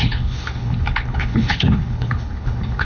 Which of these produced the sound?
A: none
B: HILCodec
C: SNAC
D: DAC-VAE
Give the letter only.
B